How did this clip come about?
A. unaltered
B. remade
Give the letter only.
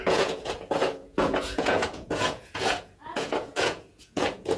B